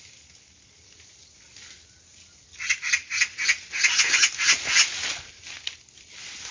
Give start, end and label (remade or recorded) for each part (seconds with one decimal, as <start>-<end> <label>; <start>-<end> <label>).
0.0-6.5 recorded